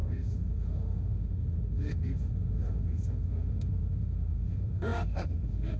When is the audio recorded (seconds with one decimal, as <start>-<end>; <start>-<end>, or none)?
none

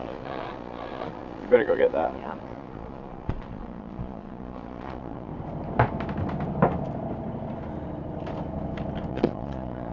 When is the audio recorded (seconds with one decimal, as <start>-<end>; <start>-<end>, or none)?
5.3-9.1